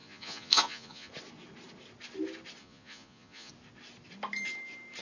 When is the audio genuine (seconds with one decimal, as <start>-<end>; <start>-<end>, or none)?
1.1-2.6; 3.5-5.0